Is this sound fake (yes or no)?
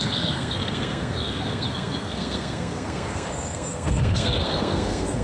yes